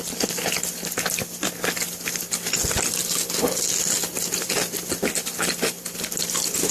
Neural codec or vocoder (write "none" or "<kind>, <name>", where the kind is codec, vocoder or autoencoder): none